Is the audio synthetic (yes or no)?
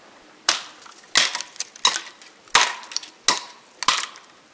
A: no